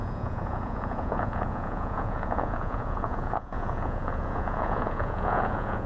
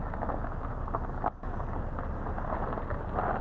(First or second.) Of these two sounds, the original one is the second